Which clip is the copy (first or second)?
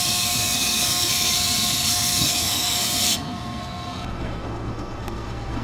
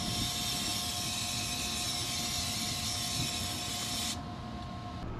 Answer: first